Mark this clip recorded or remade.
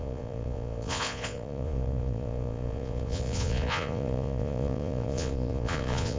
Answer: remade